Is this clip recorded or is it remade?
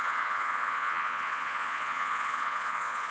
remade